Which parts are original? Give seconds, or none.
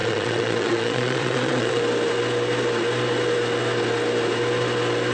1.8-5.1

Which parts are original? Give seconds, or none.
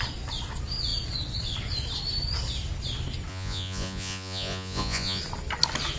0.0-3.3; 5.2-6.0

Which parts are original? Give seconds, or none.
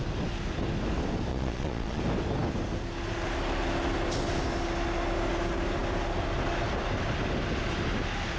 0.0-1.3; 2.0-8.4